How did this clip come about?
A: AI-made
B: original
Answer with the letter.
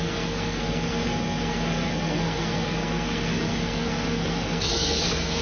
A